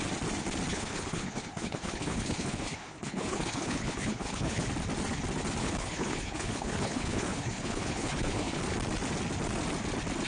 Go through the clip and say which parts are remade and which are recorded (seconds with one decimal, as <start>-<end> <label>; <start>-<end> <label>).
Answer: 0.0-0.7 recorded; 0.7-4.6 remade; 4.6-5.6 recorded; 5.6-8.6 remade; 8.6-10.3 recorded

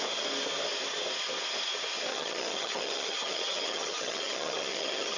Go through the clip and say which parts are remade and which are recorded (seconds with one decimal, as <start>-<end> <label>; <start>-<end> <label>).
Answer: 0.0-2.1 recorded; 2.1-5.2 remade